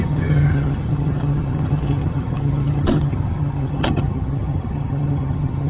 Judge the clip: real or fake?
fake